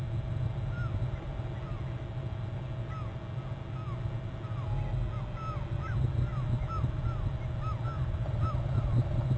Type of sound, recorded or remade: recorded